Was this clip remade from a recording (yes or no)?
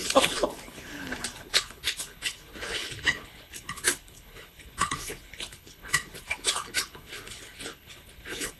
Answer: yes